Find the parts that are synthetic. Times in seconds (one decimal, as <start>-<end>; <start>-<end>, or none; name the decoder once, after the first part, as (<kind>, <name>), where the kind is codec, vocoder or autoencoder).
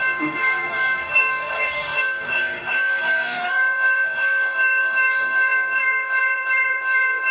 0.0-7.3 (autoencoder, DAC-VAE)